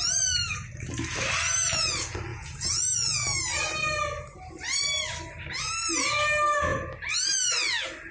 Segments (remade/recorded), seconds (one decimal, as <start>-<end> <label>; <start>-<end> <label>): 0.0-2.3 recorded; 2.3-3.4 remade; 3.4-8.1 recorded